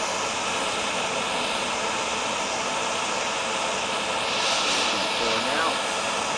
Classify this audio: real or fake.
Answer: real